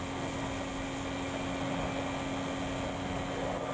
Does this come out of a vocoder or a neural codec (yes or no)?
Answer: no